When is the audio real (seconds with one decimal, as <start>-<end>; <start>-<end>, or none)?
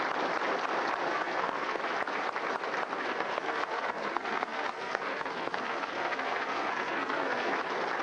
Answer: 0.0-1.1; 1.8-3.0; 7.5-8.0